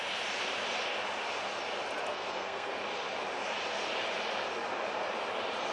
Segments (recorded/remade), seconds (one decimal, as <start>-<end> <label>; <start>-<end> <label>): 0.0-2.1 recorded; 2.1-2.7 remade; 2.7-5.7 recorded

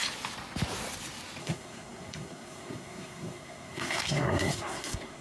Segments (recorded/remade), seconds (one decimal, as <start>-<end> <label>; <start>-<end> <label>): 0.0-1.4 recorded; 1.4-5.2 remade

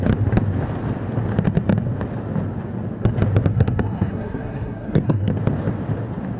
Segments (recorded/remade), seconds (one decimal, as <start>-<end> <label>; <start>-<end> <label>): 0.0-3.5 recorded; 3.5-5.3 remade; 5.3-6.4 recorded

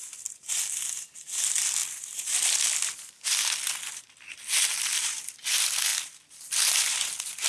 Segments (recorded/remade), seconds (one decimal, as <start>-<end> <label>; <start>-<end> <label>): 0.0-7.5 recorded

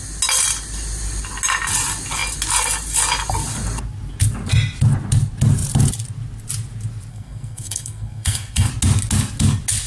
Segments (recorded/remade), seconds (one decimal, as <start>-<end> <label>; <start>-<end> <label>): 0.0-7.1 recorded; 7.1-8.7 remade; 8.7-9.9 recorded

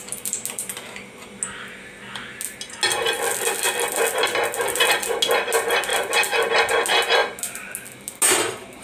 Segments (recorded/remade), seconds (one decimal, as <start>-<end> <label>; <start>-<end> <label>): 0.0-8.8 recorded

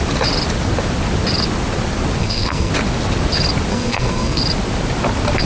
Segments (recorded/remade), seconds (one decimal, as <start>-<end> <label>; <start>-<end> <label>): 0.0-2.2 recorded; 2.2-2.7 remade; 2.7-3.7 recorded; 3.7-4.4 remade; 4.4-5.5 recorded

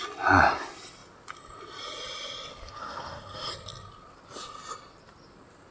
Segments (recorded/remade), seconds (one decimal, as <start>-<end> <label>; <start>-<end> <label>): 0.0-2.5 recorded; 2.5-3.5 remade; 3.5-5.7 recorded